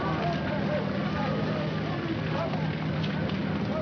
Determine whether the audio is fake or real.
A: real